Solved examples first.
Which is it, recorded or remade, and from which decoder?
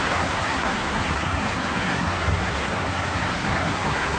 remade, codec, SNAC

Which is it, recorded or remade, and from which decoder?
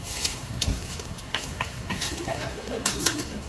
remade, codec, SNAC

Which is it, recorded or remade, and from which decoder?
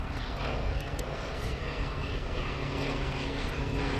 remade, codec, SNAC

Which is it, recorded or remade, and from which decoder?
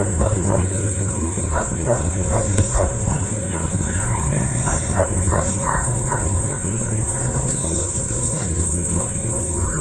remade, codec, SNAC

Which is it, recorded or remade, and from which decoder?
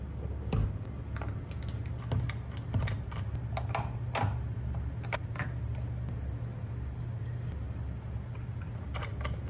recorded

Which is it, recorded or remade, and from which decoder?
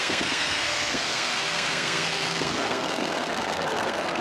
remade, codec, SNAC